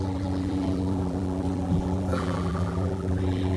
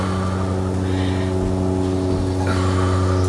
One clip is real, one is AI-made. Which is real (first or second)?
second